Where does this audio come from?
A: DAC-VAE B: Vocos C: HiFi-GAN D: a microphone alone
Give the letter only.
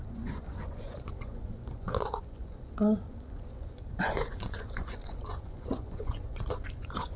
B